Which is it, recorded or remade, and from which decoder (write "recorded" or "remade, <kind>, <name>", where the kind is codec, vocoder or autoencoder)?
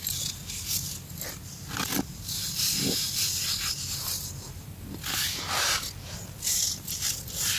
recorded